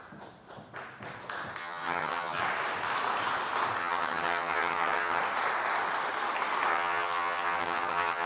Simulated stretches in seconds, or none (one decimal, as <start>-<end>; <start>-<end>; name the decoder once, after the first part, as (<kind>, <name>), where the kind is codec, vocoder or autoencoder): 1.6-2.4 (vocoder, HiFi-GAN); 3.8-5.2; 6.7-8.3